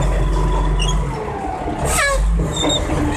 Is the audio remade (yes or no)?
no